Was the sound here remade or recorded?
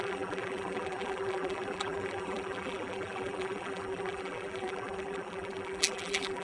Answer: remade